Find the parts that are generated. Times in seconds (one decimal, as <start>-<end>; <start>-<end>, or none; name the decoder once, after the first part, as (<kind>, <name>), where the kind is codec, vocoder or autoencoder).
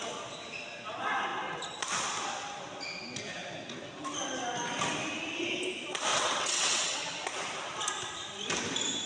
6.1-7.0 (vocoder, WaveNeXt)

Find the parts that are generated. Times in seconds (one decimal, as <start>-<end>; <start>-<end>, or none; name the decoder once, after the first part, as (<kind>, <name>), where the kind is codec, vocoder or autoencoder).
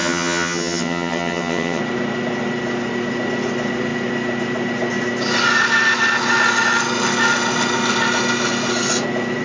0.0-1.8 (vocoder, HiFi-GAN)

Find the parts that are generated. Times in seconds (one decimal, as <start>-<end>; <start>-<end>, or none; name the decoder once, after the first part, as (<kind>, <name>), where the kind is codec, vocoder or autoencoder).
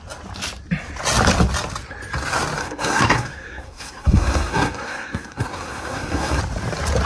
2.6-6.4 (codec, SNAC)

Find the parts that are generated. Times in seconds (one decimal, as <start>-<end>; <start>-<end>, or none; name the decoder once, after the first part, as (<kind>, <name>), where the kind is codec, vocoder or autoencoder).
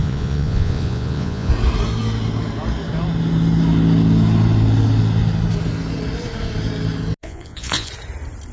0.0-1.5 (vocoder, Vocos); 7.2-7.9